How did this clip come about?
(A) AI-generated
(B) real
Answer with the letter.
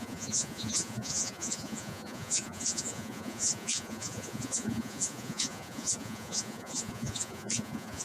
A